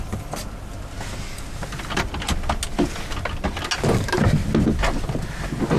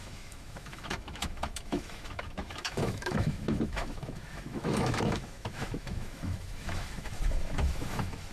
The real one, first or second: first